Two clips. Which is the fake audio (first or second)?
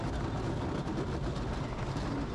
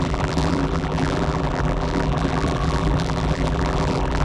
second